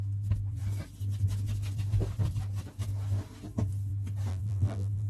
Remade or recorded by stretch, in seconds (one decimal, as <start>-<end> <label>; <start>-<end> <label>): 0.0-4.3 recorded; 4.3-5.1 remade